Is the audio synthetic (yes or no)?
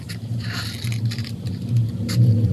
no